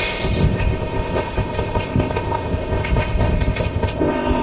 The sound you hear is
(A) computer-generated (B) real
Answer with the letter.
A